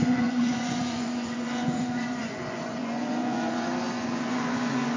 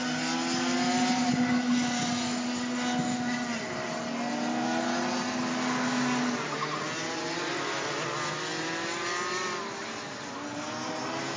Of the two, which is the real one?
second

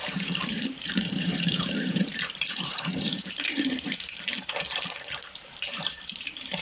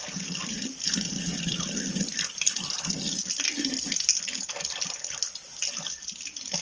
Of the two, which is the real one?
second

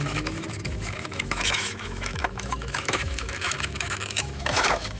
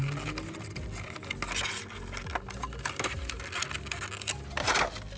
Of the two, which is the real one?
second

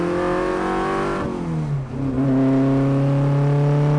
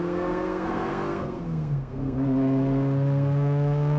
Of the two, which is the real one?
first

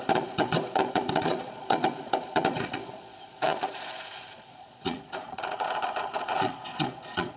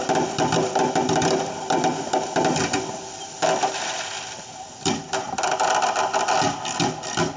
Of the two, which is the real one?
second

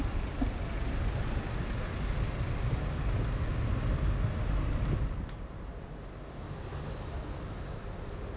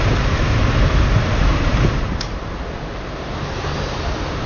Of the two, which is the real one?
first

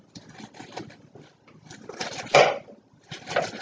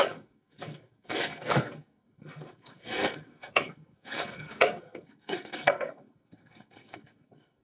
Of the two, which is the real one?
first